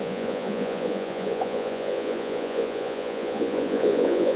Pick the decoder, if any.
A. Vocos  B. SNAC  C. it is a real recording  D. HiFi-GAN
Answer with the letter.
A